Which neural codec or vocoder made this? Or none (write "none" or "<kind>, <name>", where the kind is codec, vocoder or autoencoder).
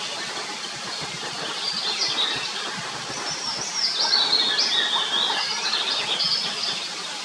none